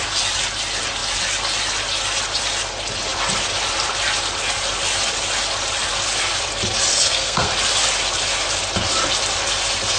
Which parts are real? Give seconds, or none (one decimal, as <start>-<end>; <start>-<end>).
0.0-6.9; 7.5-10.0